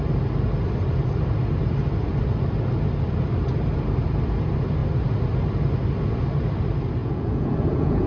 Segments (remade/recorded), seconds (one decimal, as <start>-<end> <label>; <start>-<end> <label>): 0.0-7.0 recorded; 7.0-8.1 remade